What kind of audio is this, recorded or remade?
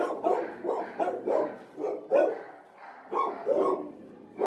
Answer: recorded